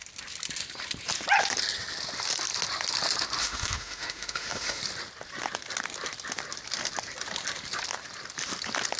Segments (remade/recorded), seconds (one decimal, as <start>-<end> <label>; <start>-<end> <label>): 0.0-3.4 recorded; 3.4-4.8 remade; 4.8-9.0 recorded